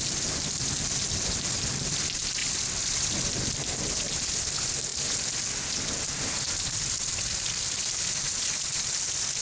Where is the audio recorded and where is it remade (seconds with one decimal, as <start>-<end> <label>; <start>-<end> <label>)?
0.0-2.4 recorded; 2.4-3.3 remade; 3.3-9.4 recorded